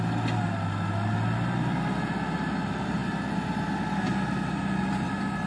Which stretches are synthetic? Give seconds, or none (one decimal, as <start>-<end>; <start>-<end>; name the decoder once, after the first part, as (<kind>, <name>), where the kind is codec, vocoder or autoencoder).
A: none